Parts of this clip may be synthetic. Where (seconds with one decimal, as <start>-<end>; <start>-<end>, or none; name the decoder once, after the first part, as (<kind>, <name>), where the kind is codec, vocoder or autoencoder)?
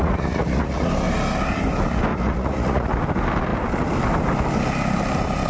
0.0-0.9 (vocoder, Vocos); 2.1-2.9